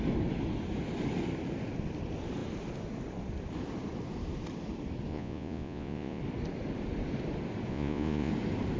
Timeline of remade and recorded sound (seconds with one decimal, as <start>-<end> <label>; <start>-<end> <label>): 0.0-5.1 recorded; 5.1-6.2 remade; 6.2-7.7 recorded; 7.7-8.3 remade; 8.3-8.8 recorded